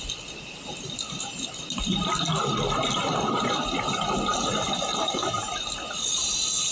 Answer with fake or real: real